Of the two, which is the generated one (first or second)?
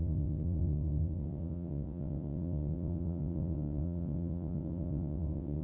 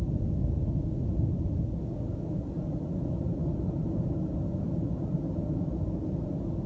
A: first